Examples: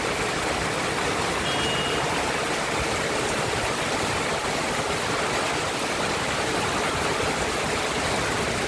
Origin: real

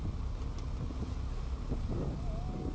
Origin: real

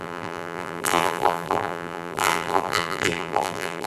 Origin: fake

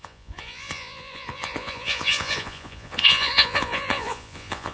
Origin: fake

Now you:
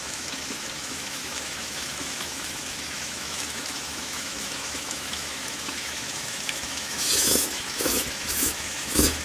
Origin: fake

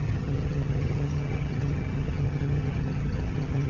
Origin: fake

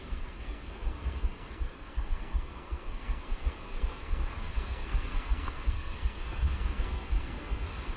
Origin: fake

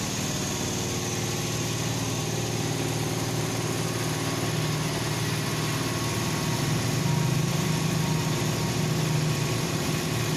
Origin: real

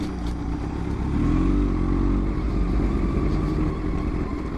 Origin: real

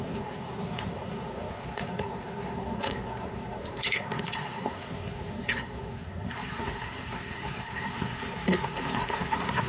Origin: fake